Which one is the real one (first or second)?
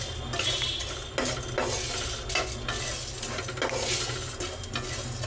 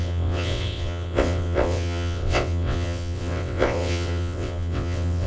first